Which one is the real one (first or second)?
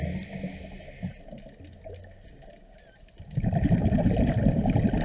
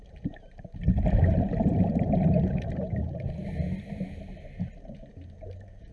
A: first